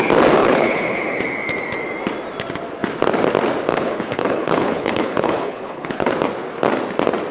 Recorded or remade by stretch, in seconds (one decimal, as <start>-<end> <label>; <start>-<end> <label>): 0.0-0.4 recorded; 0.4-1.2 remade; 1.2-3.7 recorded; 3.7-6.1 remade; 6.1-7.3 recorded